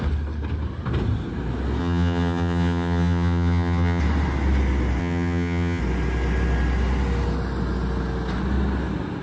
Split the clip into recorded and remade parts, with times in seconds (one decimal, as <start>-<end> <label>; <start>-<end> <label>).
0.0-1.8 recorded; 1.8-4.0 remade; 4.0-5.0 recorded; 5.0-5.8 remade; 5.8-9.2 recorded